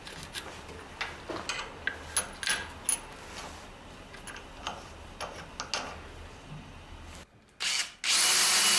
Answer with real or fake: real